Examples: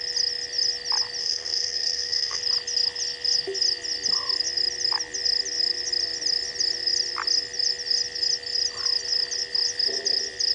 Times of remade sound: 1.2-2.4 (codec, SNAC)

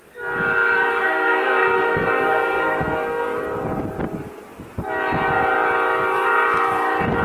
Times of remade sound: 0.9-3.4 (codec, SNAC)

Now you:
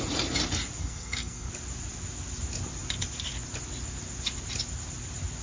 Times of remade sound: 0.8-1.5 (codec, SNAC)

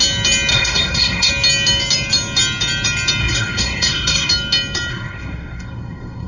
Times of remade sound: 0.5-1.3 (codec, SNAC); 3.2-4.3; 4.9-6.3